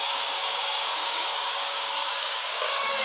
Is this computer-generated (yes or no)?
yes